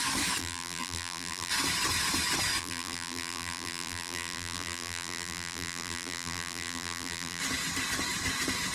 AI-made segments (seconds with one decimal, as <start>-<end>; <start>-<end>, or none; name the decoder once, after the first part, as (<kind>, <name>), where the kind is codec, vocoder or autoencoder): 0.4-1.5 (vocoder, BigVGAN v2); 2.6-7.4